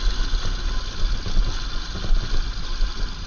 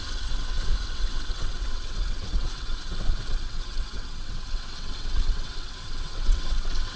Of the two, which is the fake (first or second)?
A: second